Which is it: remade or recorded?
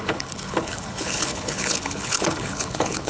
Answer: remade